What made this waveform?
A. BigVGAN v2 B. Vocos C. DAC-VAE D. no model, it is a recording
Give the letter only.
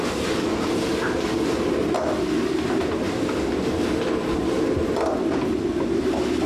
D